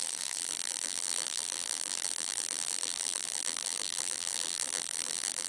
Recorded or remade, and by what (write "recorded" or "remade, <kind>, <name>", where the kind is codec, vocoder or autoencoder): remade, vocoder, BigVGAN v2